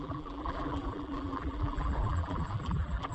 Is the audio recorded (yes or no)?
no